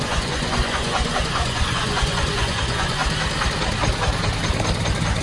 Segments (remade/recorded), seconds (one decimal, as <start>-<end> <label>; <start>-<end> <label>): 0.0-3.0 remade; 3.0-5.2 recorded